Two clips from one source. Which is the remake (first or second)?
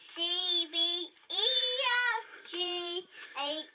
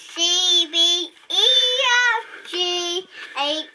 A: first